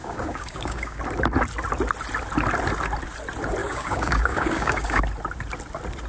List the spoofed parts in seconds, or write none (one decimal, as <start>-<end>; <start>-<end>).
0.0-1.0; 3.6-5.0